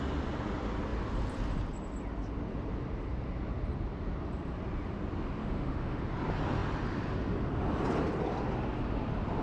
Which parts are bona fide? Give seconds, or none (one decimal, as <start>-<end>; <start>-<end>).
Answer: 0.0-5.4; 6.0-9.4